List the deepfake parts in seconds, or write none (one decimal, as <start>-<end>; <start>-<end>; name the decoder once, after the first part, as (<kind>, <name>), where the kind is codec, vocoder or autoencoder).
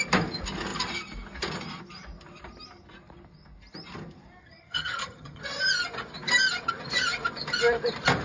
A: 4.4-5.4 (vocoder, HiFi-GAN)